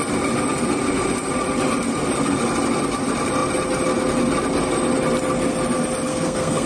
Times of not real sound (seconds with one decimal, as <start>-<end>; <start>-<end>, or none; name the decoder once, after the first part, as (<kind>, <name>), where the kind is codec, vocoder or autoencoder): 6.1-6.7 (codec, SNAC)